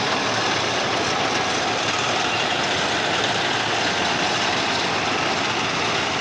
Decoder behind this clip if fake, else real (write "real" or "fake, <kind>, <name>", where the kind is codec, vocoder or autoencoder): real